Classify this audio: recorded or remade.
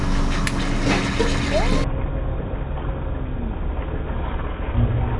recorded